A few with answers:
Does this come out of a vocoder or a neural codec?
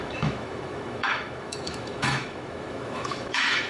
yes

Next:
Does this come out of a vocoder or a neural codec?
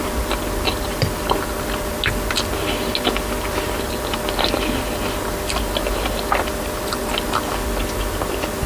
no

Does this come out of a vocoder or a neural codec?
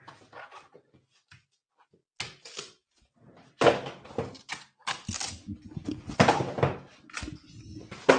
no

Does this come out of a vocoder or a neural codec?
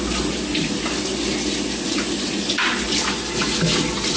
no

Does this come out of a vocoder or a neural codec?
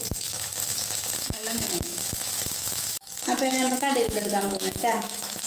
yes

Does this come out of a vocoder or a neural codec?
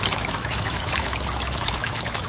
yes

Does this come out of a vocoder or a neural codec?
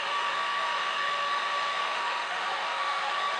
yes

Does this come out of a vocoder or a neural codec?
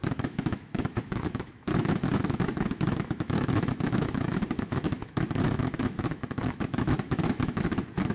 yes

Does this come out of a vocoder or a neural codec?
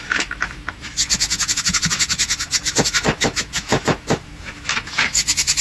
yes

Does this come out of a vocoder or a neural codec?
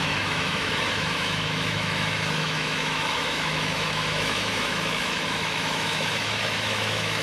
yes